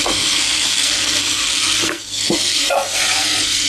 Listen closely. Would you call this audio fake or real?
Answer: fake